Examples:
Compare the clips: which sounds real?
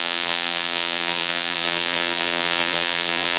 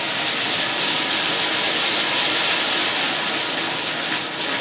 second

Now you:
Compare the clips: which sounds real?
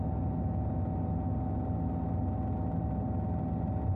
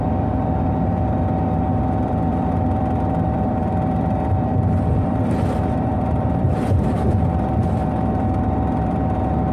first